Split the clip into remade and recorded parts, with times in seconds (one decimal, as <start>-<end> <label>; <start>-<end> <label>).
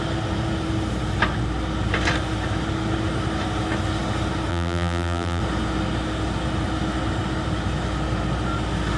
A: 0.0-4.5 recorded; 4.5-5.4 remade; 5.4-9.0 recorded